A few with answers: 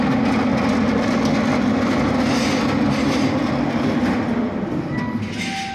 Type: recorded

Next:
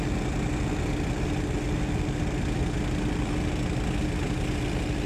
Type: recorded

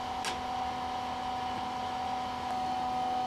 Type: recorded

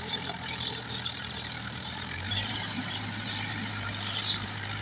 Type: remade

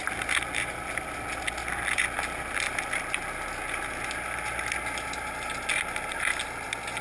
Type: recorded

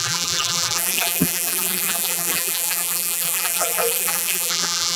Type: remade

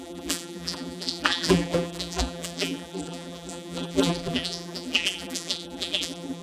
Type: remade